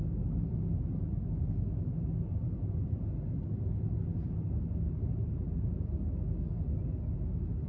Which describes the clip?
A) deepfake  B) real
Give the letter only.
B